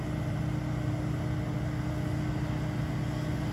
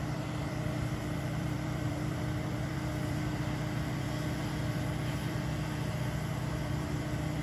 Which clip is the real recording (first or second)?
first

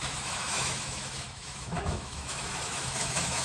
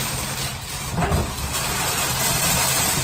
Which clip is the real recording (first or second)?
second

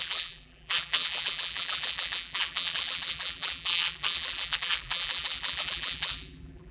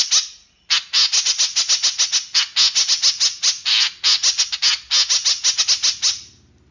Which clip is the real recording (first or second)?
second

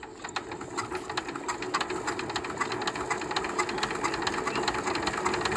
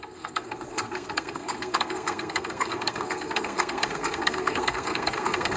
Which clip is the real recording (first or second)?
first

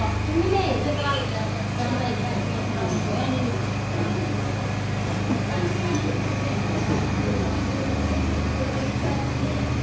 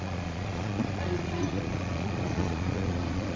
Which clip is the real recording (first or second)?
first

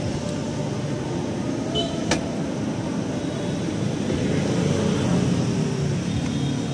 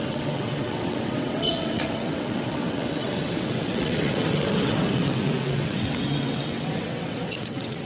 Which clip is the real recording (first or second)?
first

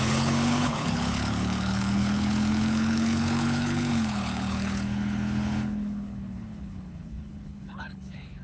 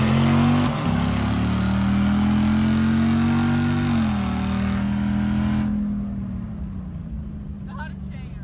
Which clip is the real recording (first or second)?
second